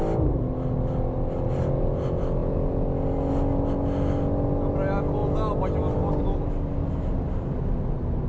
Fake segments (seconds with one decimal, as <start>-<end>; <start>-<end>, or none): none